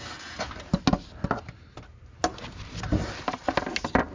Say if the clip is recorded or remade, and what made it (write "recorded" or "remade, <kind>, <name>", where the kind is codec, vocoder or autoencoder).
recorded